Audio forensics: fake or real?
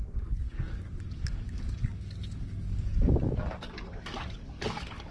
fake